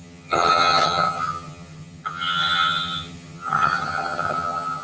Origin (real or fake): fake